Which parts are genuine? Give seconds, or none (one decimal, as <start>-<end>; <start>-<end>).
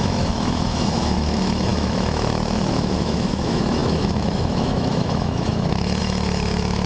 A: none